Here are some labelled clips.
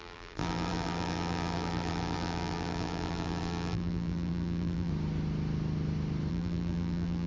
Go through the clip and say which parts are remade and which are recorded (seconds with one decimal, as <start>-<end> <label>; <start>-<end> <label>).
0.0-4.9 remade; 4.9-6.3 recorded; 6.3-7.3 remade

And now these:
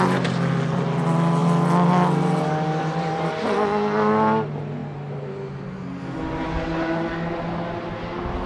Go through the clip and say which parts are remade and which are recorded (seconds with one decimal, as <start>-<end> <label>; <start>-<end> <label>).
0.0-8.5 recorded

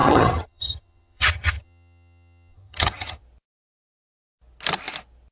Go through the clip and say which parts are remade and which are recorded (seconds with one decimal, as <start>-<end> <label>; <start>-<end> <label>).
0.0-3.2 remade; 3.2-5.3 recorded

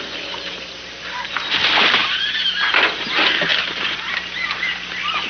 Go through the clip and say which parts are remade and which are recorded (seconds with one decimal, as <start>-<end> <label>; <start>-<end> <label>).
0.0-5.3 recorded

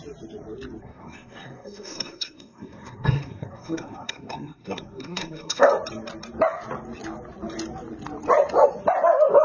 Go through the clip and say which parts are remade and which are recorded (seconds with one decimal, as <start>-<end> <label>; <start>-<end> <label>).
0.0-0.8 recorded; 0.8-5.7 remade; 5.7-9.4 recorded